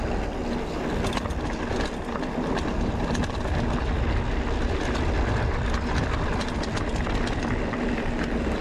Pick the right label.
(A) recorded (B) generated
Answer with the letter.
A